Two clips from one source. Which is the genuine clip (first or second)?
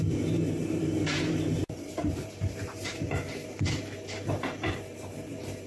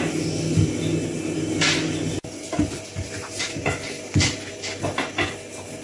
second